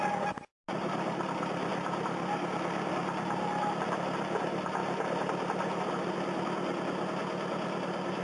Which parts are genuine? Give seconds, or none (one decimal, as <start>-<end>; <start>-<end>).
0.0-8.2